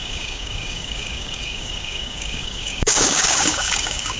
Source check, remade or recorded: remade